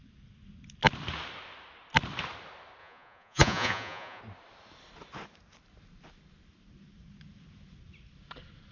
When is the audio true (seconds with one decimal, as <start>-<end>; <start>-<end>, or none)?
0.0-2.8; 4.2-8.7